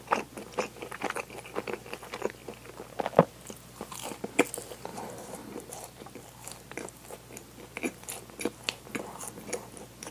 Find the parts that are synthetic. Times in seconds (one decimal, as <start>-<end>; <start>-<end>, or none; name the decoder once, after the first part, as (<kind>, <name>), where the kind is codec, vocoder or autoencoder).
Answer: 4.9-6.2 (vocoder, BigVGAN v2)